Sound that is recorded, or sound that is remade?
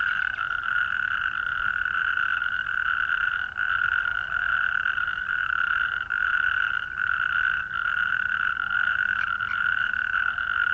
recorded